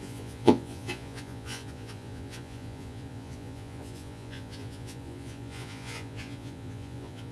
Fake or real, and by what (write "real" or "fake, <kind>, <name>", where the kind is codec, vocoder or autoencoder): fake, vocoder, Vocos